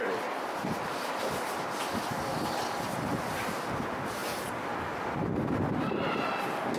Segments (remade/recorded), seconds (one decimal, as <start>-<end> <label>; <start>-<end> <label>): 0.0-4.2 recorded; 4.2-6.8 remade